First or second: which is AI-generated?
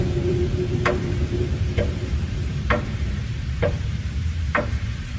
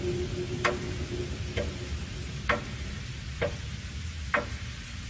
first